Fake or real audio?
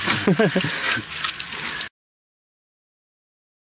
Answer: real